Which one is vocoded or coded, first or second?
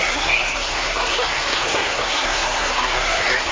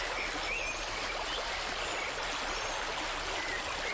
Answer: first